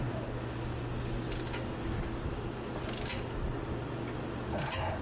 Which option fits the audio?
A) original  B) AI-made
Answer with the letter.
A